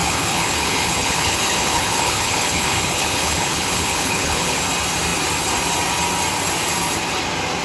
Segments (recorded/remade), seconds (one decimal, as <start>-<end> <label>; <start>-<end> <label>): 0.0-4.6 remade; 4.6-7.6 recorded